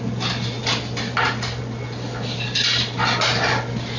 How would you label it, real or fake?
real